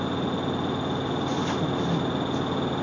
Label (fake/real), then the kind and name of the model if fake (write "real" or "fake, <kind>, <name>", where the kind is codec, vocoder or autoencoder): real